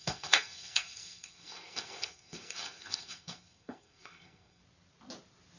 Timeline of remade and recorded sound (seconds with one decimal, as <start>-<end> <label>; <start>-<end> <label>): 0.0-4.6 remade; 4.6-5.6 recorded

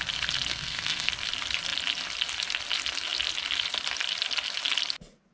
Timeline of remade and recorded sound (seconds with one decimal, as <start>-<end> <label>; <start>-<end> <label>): 0.0-0.5 recorded; 0.5-1.1 remade; 1.1-5.3 recorded

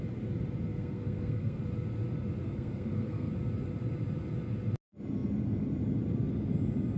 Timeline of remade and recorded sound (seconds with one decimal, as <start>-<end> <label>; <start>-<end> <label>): 0.0-0.7 recorded; 0.7-1.6 remade; 1.6-2.4 recorded; 2.4-3.3 remade; 3.3-7.0 recorded

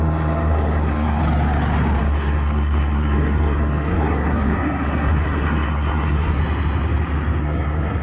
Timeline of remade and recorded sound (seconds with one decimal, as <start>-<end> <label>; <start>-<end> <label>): 0.0-1.2 remade; 1.2-2.0 recorded; 2.0-6.4 remade; 6.4-7.4 recorded; 7.4-8.0 remade